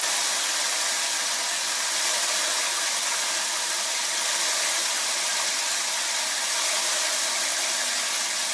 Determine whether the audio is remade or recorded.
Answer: recorded